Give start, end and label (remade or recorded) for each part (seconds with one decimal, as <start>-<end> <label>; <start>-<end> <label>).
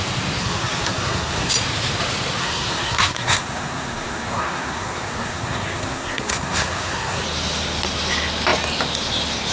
0.0-0.4 recorded; 0.4-1.5 remade; 1.5-2.4 recorded; 2.4-7.2 remade; 7.2-9.5 recorded